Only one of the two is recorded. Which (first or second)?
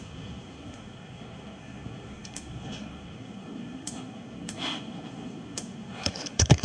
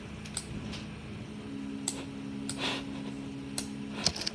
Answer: second